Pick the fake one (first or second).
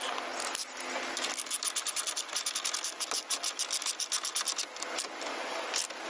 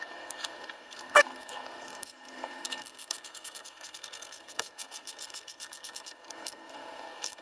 second